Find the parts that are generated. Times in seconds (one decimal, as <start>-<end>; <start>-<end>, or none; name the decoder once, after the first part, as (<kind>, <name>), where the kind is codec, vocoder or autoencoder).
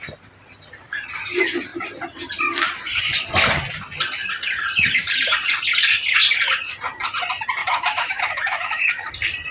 7.6-9.1 (autoencoder, DAC-VAE)